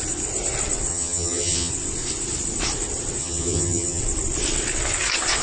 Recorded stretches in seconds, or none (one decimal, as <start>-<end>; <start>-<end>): 0.0-0.9; 1.7-3.2; 4.0-5.4